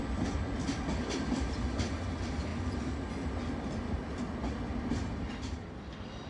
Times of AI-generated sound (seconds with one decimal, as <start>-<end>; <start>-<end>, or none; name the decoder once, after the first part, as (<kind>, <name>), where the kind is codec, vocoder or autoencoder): none